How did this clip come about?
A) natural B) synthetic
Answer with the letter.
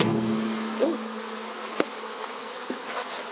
B